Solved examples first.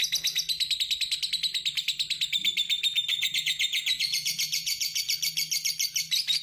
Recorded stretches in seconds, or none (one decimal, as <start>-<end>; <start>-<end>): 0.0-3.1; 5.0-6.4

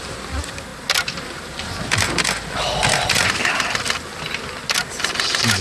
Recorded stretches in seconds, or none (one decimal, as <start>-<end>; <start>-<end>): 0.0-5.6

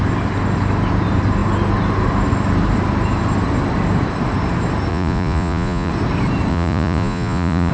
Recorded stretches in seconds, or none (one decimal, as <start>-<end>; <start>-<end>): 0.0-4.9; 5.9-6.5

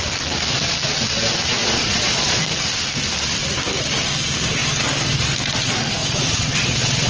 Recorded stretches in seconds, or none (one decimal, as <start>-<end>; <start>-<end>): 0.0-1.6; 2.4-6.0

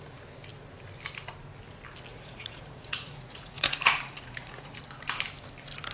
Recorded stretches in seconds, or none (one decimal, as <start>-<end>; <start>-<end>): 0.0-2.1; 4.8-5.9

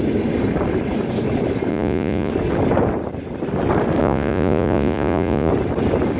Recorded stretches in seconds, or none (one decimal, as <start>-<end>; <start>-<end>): 0.0-1.7; 2.3-4.0; 5.5-6.2

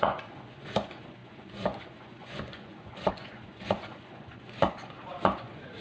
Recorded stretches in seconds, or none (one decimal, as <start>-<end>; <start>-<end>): none

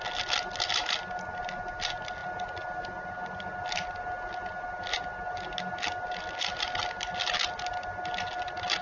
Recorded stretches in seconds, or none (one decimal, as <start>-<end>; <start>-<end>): 0.0-8.8